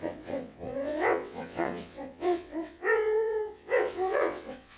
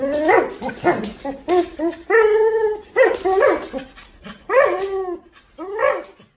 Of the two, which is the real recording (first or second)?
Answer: second